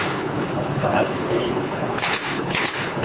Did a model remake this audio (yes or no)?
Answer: yes